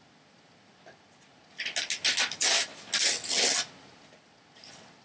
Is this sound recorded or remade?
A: recorded